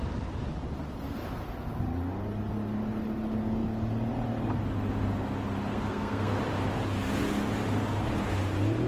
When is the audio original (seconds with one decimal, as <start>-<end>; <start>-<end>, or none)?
0.0-5.7; 6.4-8.9